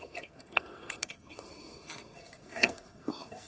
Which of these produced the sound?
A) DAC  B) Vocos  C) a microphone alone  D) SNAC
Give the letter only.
D